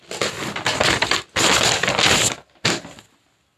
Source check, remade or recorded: recorded